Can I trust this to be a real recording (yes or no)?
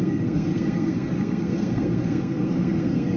no